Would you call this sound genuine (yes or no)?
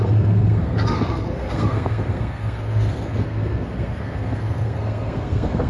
no